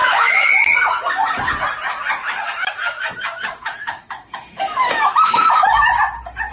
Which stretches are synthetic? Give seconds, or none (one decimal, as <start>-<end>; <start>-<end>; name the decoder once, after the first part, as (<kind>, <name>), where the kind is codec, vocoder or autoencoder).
0.0-0.5 (autoencoder, DAC-VAE); 2.2-5.9